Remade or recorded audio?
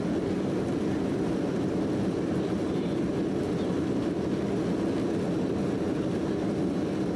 recorded